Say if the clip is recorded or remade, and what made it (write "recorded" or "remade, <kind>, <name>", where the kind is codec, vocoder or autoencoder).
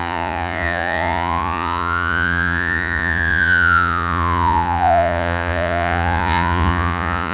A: remade, vocoder, Vocos